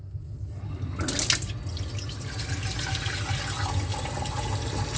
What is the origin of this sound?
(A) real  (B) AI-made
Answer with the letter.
A